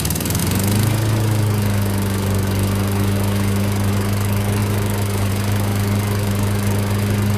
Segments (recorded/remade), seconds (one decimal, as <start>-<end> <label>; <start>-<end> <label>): 0.0-7.4 remade